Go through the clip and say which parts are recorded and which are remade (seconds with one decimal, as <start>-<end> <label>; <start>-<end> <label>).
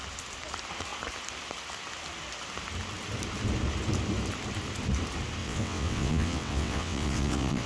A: 0.0-5.4 recorded; 5.4-7.7 remade